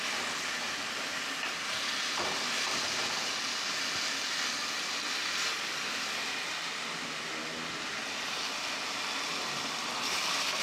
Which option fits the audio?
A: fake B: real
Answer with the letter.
B